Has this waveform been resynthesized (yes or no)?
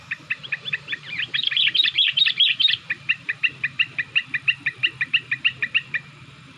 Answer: yes